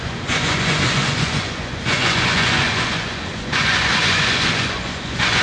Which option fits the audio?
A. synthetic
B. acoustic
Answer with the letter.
A